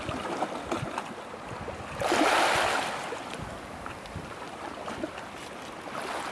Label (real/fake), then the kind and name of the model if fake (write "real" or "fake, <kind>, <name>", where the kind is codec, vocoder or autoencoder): real